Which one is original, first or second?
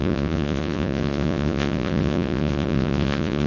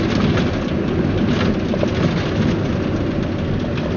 second